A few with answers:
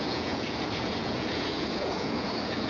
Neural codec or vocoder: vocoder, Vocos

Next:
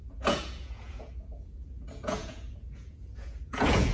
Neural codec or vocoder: vocoder, Vocos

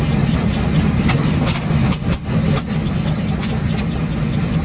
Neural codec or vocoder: none